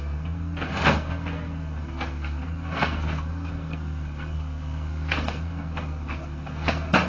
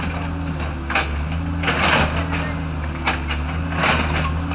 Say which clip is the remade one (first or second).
first